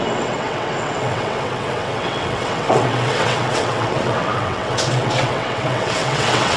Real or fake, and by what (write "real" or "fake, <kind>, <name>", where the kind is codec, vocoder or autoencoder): fake, vocoder, WaveNeXt